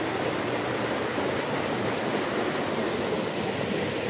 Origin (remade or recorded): recorded